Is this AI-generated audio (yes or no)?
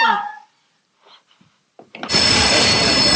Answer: no